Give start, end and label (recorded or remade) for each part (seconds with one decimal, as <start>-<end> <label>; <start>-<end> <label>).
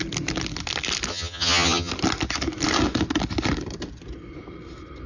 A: 0.0-1.1 recorded; 1.1-1.9 remade; 1.9-5.1 recorded